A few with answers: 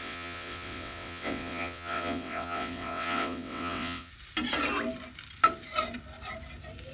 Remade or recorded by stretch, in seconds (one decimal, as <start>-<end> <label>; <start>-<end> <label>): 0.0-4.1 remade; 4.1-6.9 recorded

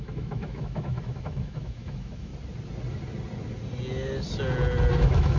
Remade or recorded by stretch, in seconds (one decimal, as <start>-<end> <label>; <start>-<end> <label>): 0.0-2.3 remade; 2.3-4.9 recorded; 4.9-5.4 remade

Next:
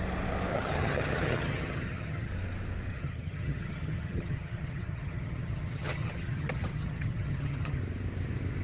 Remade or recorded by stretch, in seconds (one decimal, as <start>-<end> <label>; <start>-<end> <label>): 0.0-0.5 recorded; 0.5-2.3 remade; 2.3-2.9 recorded; 2.9-7.8 remade; 7.8-8.6 recorded

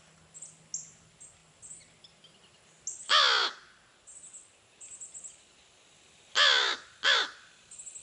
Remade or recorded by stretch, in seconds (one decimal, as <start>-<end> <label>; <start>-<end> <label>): 0.0-8.0 recorded

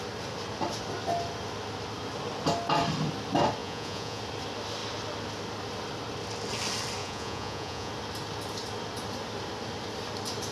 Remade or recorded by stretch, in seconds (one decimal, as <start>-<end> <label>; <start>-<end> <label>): 0.0-3.6 recorded; 3.6-4.2 remade; 4.2-7.0 recorded; 7.0-7.9 remade; 7.9-10.5 recorded

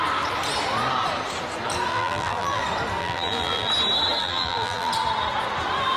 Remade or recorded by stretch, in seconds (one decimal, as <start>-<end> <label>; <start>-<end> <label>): 0.0-1.9 recorded; 1.9-2.6 remade; 2.6-3.0 recorded; 3.0-3.7 remade; 3.7-4.2 recorded; 4.2-4.9 remade; 4.9-6.0 recorded

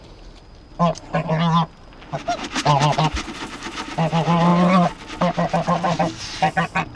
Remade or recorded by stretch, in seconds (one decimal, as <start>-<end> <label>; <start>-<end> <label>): 0.0-7.0 recorded